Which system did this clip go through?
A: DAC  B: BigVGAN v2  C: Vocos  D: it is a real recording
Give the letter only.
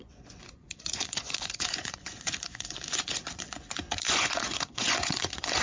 C